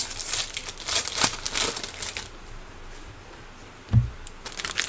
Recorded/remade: recorded